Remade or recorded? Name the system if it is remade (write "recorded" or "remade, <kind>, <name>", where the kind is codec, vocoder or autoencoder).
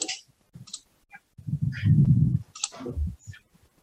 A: recorded